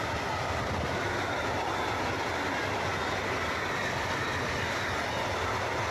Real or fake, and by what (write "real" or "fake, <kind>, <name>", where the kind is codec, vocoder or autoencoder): real